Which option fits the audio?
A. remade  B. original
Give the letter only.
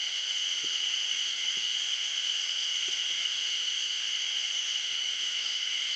A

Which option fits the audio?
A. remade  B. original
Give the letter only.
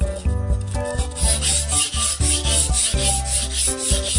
B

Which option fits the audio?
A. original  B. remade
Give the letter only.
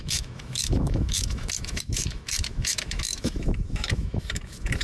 B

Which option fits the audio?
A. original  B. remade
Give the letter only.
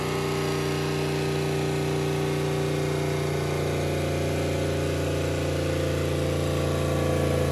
A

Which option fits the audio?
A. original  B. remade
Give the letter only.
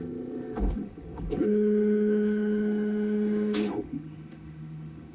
B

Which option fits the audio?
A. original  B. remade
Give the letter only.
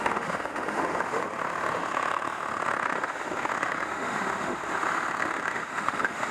B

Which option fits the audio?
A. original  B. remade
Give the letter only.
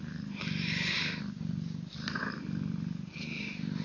A